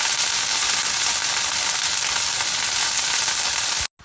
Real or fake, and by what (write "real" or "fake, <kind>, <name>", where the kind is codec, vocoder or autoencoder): real